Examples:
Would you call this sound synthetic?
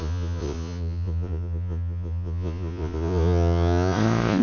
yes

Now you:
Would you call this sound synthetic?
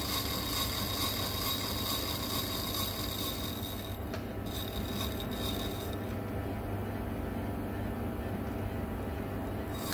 no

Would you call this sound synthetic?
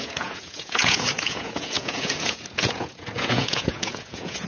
yes